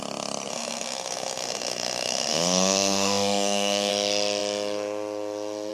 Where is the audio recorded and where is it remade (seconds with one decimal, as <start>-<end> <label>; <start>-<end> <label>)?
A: 0.0-0.5 recorded; 0.5-3.9 remade; 3.9-5.7 recorded